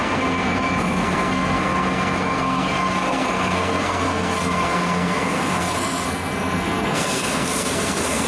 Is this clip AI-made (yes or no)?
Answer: yes